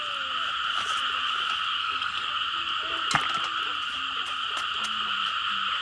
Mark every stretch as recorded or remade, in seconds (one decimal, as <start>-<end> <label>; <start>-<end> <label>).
0.0-1.8 recorded; 1.8-2.3 remade; 2.3-5.8 recorded